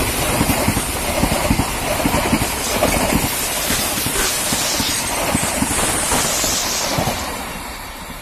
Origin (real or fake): fake